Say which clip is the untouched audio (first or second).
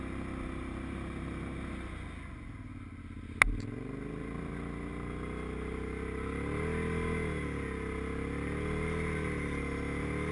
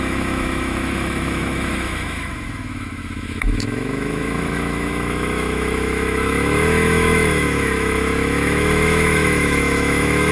first